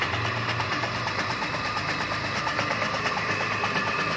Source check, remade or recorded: recorded